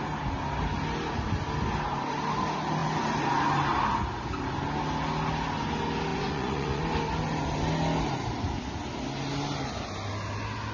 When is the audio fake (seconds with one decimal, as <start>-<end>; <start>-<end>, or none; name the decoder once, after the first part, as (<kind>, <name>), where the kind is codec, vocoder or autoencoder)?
6.1-6.8 (vocoder, Vocos)